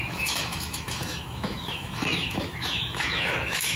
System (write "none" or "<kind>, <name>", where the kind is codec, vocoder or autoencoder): autoencoder, DAC-VAE